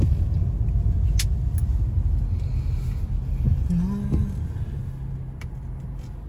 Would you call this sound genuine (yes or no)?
yes